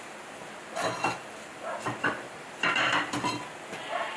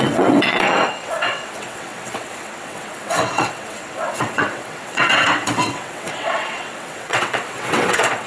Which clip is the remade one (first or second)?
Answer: second